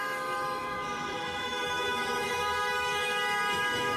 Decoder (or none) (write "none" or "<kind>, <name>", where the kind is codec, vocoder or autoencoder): autoencoder, DAC-VAE